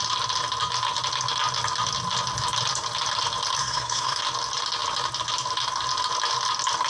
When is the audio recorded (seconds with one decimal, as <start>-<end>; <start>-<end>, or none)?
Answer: 0.0-3.6; 4.2-6.9